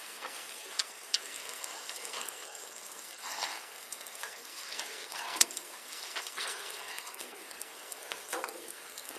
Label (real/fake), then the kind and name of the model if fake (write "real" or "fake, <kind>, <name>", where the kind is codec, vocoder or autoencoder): fake, codec, SNAC